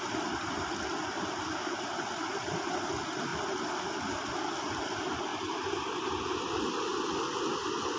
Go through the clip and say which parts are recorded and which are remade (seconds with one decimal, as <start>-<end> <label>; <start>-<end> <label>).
0.0-1.1 recorded; 1.1-2.7 remade; 2.7-5.3 recorded; 5.3-6.2 remade; 6.2-8.0 recorded